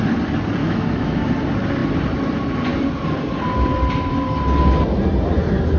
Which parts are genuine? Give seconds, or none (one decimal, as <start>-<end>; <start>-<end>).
0.0-0.6; 1.3-5.8